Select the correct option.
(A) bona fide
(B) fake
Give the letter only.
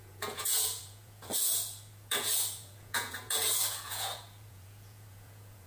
B